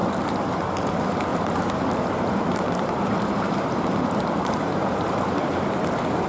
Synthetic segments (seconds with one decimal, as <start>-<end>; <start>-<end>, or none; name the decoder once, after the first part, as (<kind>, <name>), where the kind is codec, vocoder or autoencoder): 1.3-5.1 (vocoder, BigVGAN v2)